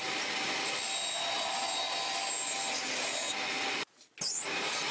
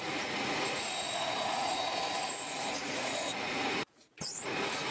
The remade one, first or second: second